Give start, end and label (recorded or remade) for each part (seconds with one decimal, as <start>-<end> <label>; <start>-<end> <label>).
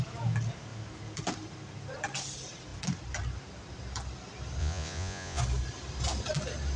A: 0.0-4.6 recorded; 4.6-5.4 remade; 5.4-6.8 recorded